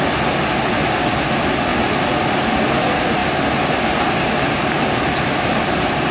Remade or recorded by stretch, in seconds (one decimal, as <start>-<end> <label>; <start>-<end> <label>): 0.0-6.1 recorded